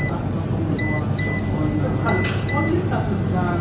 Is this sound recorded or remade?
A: recorded